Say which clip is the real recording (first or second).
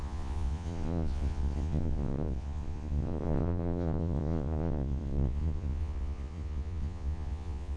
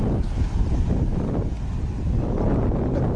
second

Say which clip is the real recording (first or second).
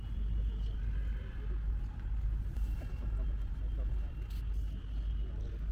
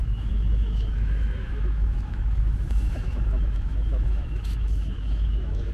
first